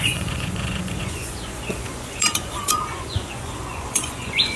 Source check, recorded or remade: remade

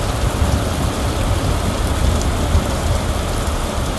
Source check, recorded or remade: recorded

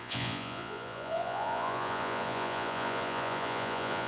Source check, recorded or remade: remade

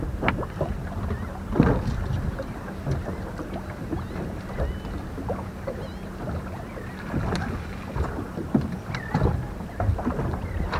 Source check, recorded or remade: recorded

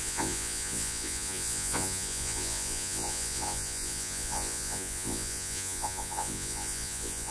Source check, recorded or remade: remade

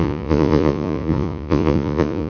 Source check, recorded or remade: remade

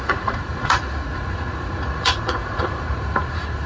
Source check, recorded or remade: remade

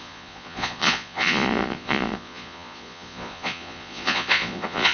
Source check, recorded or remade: remade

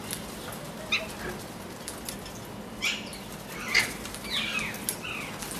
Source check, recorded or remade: recorded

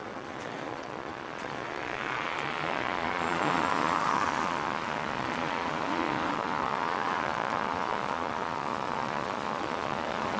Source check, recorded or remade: remade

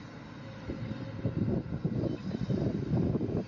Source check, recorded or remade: recorded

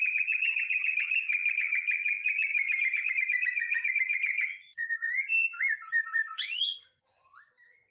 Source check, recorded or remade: remade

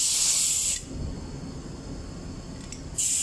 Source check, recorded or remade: recorded